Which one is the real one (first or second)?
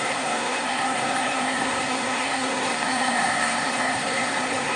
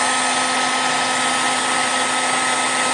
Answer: second